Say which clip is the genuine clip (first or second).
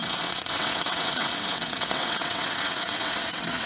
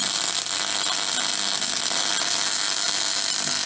second